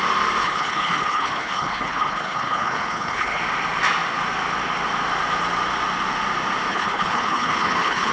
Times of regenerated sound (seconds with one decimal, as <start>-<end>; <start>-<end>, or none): 0.4-3.4; 6.7-8.1

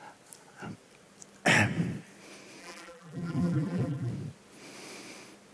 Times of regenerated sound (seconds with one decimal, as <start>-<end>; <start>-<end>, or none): 2.6-4.1

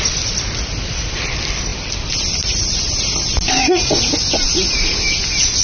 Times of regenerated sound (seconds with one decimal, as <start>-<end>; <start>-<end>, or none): none

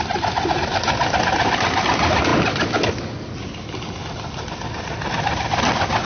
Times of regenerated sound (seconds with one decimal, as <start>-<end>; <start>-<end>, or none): none